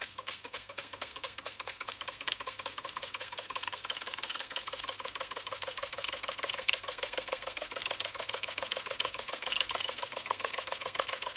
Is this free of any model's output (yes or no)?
no